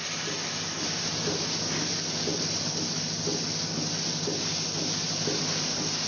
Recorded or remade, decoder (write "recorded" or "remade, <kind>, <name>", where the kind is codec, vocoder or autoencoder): recorded